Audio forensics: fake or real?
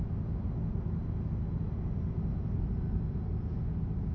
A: real